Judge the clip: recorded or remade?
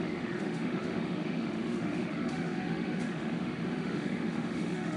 remade